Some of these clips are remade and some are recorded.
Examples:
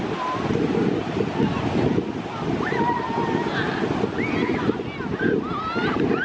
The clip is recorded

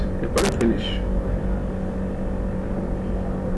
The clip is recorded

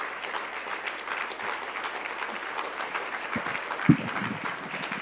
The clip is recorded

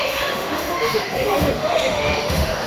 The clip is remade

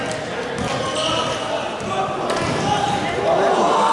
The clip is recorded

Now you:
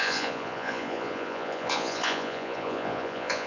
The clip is remade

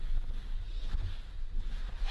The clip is recorded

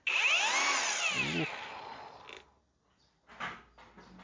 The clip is recorded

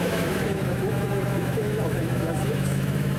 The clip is remade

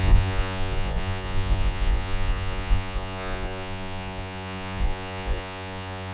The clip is remade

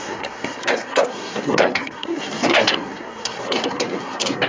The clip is remade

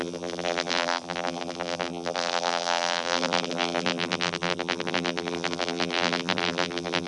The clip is remade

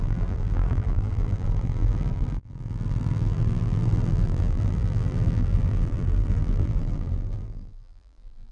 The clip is remade